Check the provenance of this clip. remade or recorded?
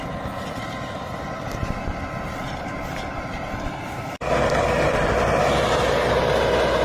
recorded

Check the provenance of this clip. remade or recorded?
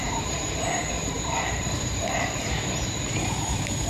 remade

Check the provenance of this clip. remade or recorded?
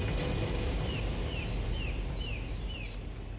recorded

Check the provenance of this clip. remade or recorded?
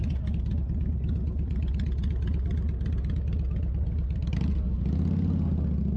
recorded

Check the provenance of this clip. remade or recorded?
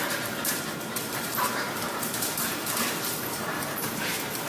remade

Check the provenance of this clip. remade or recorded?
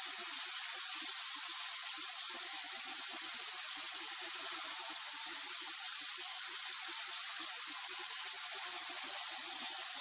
remade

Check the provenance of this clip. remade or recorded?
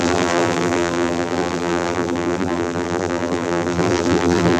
remade